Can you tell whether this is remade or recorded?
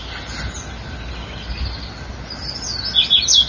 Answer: recorded